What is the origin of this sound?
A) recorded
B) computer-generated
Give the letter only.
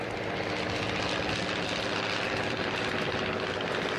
A